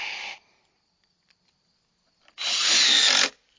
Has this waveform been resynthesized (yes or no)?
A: no